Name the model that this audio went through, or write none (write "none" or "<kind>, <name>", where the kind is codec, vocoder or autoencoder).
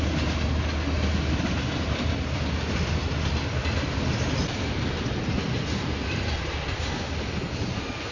none